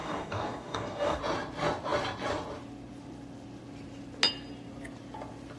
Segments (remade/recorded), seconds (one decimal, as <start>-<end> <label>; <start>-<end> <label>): 0.0-1.2 remade; 1.2-5.6 recorded